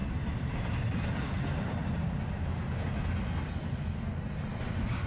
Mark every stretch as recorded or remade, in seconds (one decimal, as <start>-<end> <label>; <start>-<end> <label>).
0.0-5.1 recorded